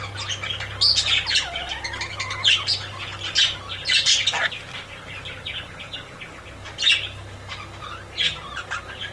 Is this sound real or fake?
real